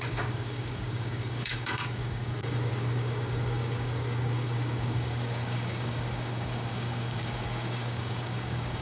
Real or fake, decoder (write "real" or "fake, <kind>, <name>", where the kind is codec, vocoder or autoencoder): fake, codec, DAC